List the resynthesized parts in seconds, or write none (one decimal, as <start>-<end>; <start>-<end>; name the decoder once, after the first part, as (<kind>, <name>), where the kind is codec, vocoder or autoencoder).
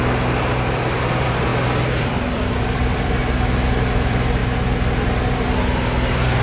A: 0.7-1.5 (vocoder, BigVGAN v2); 2.0-3.2; 3.7-4.4; 4.9-6.4